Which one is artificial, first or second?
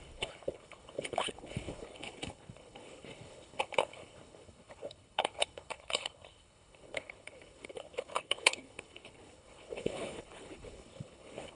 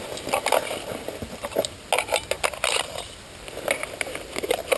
first